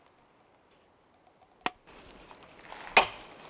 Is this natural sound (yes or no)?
yes